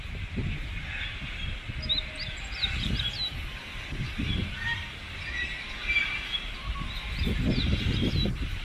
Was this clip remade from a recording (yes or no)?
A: no